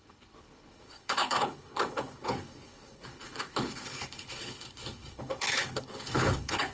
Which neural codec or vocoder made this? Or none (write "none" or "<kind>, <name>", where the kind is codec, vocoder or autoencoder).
codec, HILCodec